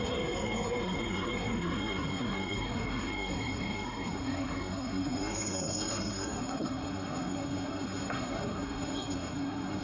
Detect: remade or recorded remade